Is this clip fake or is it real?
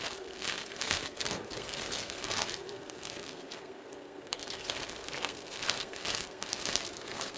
fake